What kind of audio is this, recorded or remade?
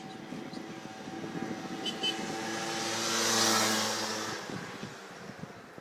recorded